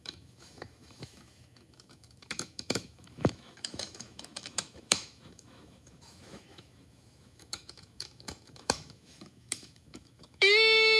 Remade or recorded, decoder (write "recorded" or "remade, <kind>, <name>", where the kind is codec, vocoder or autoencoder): remade, autoencoder, DAC-VAE